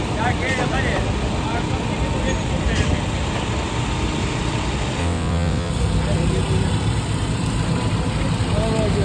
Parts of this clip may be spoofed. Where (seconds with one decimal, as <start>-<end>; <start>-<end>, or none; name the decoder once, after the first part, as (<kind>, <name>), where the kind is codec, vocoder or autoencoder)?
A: 5.0-5.7 (vocoder, WaveNeXt)